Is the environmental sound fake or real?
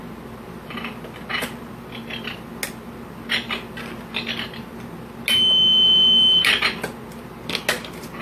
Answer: real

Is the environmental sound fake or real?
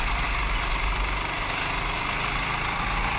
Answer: real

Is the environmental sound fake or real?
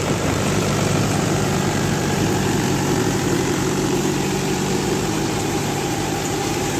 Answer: fake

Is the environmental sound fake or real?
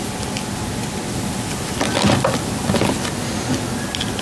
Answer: real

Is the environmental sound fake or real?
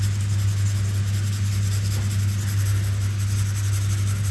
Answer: real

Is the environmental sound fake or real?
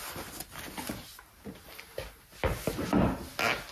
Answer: real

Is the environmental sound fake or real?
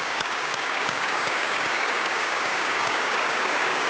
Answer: fake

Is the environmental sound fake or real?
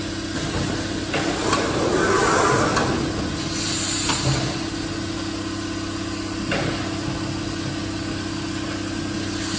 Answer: real